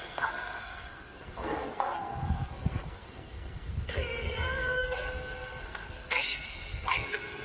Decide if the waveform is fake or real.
fake